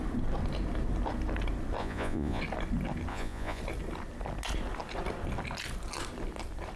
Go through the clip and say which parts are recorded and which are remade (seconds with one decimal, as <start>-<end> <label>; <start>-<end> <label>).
0.0-1.8 recorded; 1.8-2.4 remade; 2.4-3.1 recorded; 3.1-3.6 remade; 3.6-6.8 recorded